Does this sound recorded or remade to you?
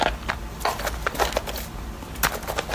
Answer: recorded